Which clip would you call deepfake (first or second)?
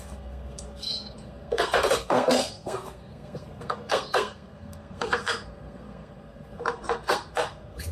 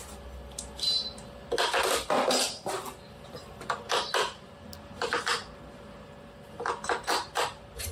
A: first